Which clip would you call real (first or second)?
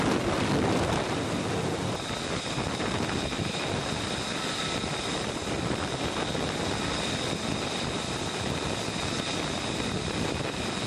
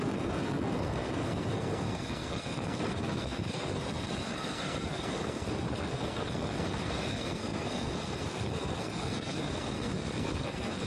first